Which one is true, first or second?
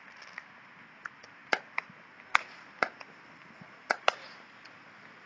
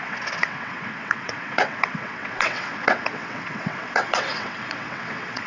first